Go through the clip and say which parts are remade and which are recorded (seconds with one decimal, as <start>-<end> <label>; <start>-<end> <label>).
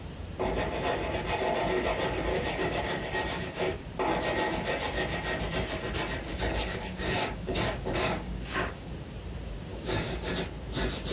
0.0-2.3 recorded; 2.3-3.8 remade; 3.8-6.3 recorded; 6.3-8.9 remade; 8.9-9.7 recorded; 9.7-10.3 remade; 10.3-11.1 recorded